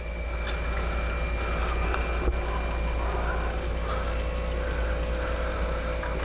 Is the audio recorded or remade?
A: recorded